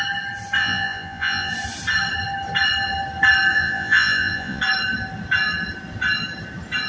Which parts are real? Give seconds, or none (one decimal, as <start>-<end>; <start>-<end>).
0.0-0.6; 1.5-3.5; 4.6-6.9